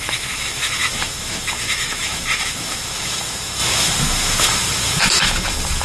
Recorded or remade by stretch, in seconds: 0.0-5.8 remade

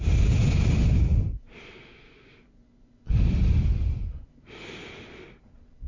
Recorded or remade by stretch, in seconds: 0.0-5.9 recorded

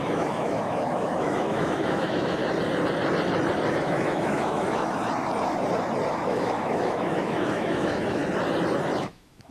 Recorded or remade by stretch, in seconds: 0.0-2.4 remade; 2.4-3.7 recorded; 3.7-5.0 remade; 5.0-6.1 recorded; 6.1-8.2 remade; 8.2-9.0 recorded; 9.0-9.5 remade